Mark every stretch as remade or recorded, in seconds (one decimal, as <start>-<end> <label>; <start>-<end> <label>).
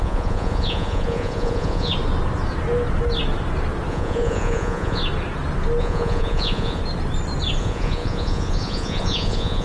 0.0-1.9 remade; 1.9-3.9 recorded; 3.9-5.0 remade; 5.0-5.8 recorded; 5.8-6.8 remade; 6.8-7.6 recorded; 7.6-9.6 remade